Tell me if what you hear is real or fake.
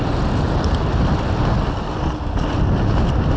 real